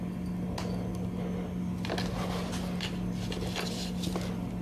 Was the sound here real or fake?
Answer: real